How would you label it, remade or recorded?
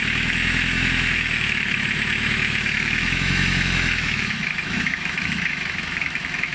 remade